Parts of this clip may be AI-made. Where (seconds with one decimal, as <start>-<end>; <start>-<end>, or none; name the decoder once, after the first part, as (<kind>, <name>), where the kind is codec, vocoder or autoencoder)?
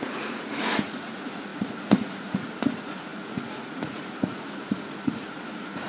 0.0-5.9 (vocoder, Vocos)